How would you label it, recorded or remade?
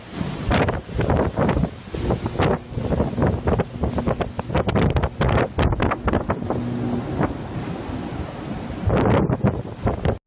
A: recorded